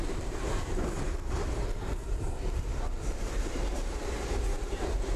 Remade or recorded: remade